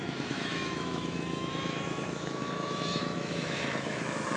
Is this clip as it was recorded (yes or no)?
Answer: no